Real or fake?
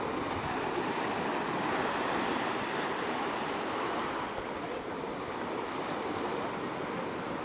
real